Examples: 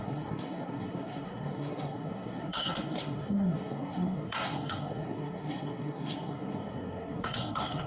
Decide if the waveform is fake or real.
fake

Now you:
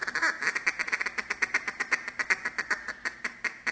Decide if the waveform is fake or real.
real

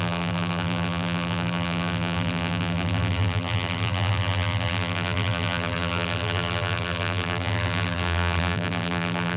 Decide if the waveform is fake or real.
fake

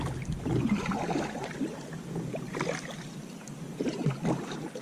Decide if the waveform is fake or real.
real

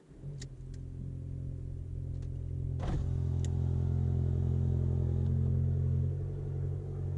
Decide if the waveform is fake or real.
real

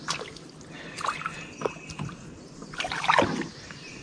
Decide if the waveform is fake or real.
real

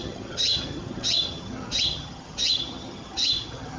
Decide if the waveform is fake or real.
fake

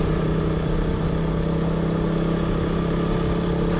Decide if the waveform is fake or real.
real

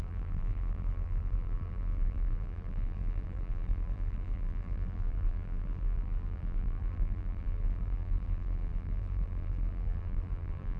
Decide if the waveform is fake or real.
fake